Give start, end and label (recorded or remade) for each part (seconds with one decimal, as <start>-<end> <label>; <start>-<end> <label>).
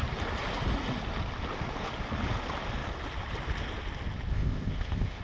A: 0.0-4.3 recorded; 4.3-5.2 remade